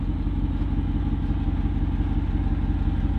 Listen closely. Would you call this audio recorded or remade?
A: recorded